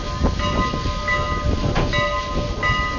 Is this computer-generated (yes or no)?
no